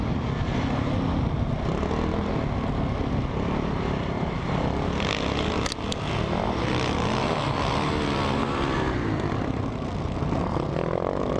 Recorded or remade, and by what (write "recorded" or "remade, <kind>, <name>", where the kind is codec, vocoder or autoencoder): recorded